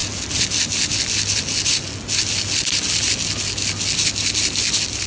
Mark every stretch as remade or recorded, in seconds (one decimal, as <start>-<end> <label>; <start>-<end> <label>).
0.0-5.1 recorded